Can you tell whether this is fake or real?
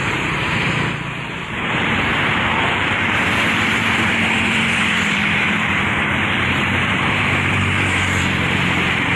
fake